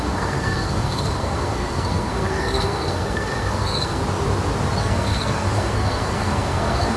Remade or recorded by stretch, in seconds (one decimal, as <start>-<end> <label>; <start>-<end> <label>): 0.0-4.0 remade; 4.0-4.8 recorded; 4.8-7.0 remade